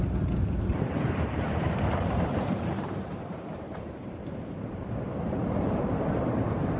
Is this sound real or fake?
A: fake